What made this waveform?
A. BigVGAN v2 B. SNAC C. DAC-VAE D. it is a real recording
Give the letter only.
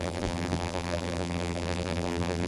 A